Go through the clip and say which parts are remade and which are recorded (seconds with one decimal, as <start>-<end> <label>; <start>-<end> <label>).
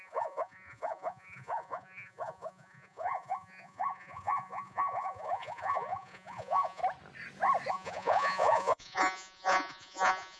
0.0-6.8 remade; 6.8-7.7 recorded; 7.7-10.4 remade